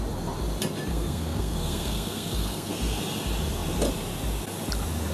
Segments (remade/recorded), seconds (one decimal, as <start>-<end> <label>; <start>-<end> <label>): 0.0-0.9 recorded; 0.9-3.0 remade; 3.0-5.1 recorded